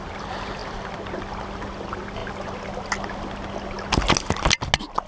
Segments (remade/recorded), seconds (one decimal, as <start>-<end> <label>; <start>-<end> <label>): 0.0-5.1 recorded